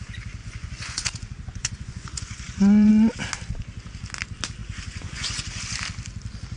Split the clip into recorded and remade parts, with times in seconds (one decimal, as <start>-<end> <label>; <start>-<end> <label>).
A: 0.0-0.4 recorded; 0.4-2.9 remade; 2.9-4.6 recorded; 4.6-5.6 remade; 5.6-6.6 recorded

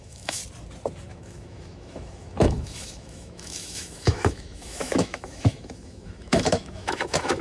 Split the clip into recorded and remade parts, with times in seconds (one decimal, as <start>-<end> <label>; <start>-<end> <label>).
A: 0.0-0.4 remade; 0.4-1.1 recorded; 1.1-7.4 remade